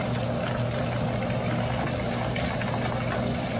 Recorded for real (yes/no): yes